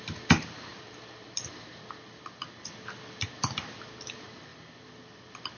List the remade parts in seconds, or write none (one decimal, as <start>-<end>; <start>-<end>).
0.7-2.4